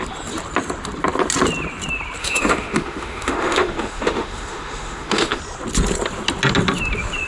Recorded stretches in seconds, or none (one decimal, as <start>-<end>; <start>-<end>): 0.0-2.2; 5.4-7.3